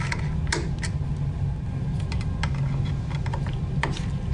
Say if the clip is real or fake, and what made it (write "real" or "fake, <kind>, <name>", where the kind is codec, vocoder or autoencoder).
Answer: real